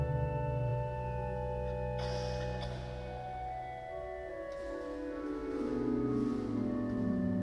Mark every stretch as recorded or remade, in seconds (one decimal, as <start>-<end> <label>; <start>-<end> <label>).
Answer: 0.0-7.4 recorded